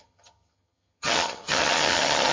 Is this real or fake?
fake